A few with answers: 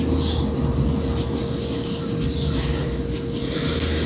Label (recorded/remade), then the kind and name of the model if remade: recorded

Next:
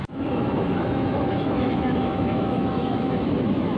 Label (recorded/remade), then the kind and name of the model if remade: remade, autoencoder, DAC-VAE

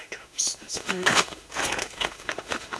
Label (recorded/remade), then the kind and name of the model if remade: remade, autoencoder, DAC-VAE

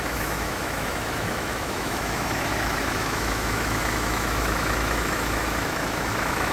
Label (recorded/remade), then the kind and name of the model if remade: remade, autoencoder, DAC-VAE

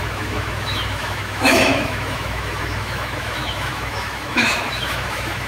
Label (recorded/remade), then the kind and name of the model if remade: remade, autoencoder, DAC-VAE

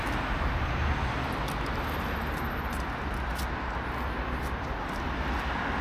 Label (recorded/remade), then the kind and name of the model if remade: recorded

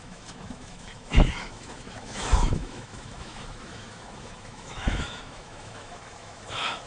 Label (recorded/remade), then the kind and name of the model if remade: remade, autoencoder, DAC-VAE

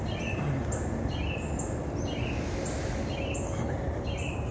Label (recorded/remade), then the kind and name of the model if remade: recorded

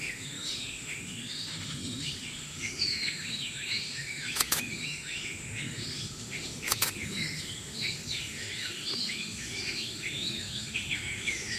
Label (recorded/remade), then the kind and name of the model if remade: remade, autoencoder, DAC-VAE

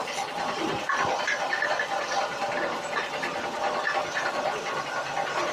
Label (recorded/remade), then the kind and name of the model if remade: recorded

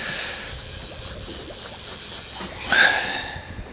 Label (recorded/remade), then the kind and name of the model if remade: recorded